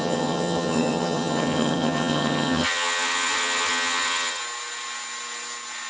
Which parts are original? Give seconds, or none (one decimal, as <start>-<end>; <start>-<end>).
4.4-5.9